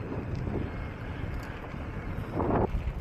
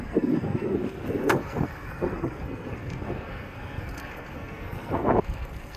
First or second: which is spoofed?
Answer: second